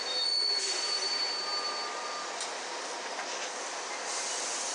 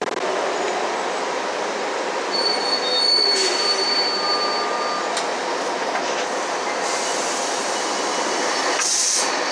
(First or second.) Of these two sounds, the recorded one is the second